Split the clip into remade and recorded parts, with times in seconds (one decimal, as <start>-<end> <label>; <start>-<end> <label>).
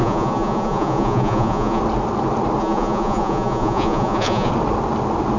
0.0-1.8 remade; 1.8-2.6 recorded; 2.6-4.5 remade; 4.5-5.4 recorded